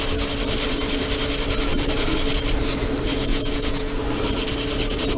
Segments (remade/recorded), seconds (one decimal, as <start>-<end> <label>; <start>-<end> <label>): 0.0-3.3 recorded; 3.3-4.0 remade; 4.0-5.2 recorded